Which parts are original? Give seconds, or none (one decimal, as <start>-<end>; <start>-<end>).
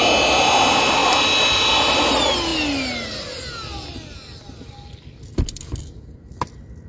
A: 0.0-6.9